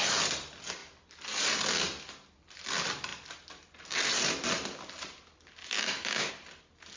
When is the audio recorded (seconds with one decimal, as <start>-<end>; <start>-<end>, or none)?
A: 0.0-5.6; 6.3-7.0